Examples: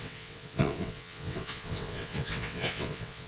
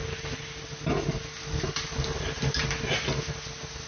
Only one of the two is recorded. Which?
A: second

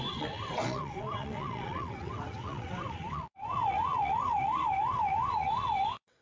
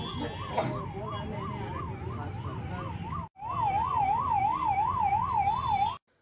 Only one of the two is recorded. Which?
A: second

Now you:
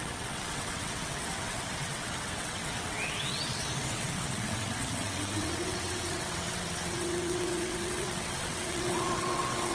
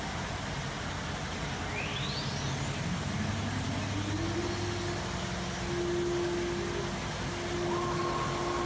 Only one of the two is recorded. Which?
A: second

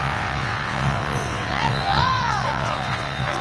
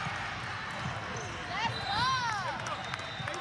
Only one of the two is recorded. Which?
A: second